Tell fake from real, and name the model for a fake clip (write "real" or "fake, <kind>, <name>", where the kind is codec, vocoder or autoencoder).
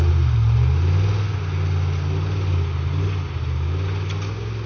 real